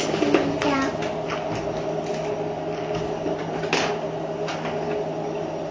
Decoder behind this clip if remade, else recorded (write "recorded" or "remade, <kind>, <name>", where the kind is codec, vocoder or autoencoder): recorded